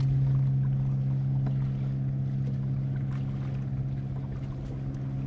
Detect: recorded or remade recorded